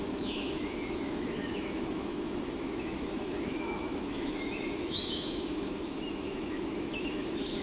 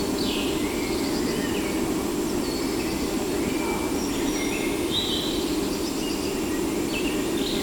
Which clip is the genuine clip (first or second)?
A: second